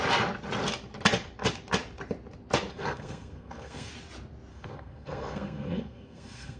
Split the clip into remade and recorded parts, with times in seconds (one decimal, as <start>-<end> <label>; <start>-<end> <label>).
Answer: 0.0-2.7 recorded; 2.7-3.9 remade; 3.9-4.5 recorded; 4.5-6.6 remade